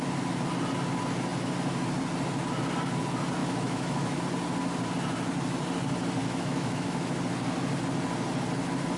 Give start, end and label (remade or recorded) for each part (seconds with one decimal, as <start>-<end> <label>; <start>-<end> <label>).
0.0-3.4 recorded; 3.4-4.2 remade; 4.2-6.2 recorded; 6.2-7.2 remade; 7.2-9.0 recorded